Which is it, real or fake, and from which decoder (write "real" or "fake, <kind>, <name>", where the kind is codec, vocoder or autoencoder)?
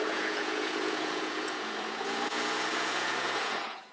fake, vocoder, Vocos